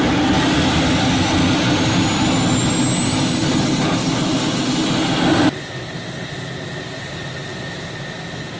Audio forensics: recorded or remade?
recorded